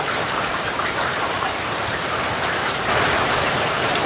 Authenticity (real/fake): fake